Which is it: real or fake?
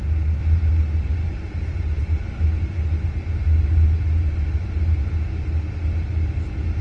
real